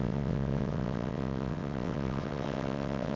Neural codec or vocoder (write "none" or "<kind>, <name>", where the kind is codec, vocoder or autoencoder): vocoder, WaveNeXt